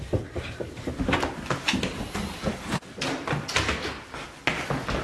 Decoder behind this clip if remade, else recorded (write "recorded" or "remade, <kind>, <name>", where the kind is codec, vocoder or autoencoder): recorded